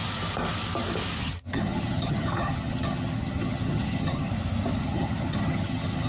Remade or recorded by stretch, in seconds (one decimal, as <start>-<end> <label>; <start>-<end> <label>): 0.0-1.2 recorded; 1.2-4.3 remade; 4.3-4.8 recorded; 4.8-6.1 remade